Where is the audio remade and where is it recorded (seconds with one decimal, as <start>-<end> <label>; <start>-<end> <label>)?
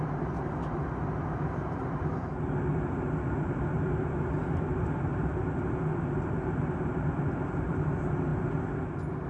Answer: 0.0-9.3 recorded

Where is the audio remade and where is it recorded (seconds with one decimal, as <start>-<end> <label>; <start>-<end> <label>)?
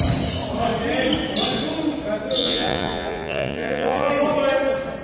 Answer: 0.0-2.4 recorded; 2.4-4.1 remade; 4.1-5.0 recorded